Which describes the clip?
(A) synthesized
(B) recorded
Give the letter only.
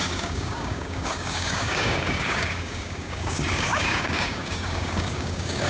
A